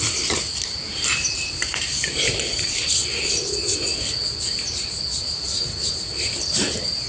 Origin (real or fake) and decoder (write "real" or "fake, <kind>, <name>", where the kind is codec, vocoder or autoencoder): real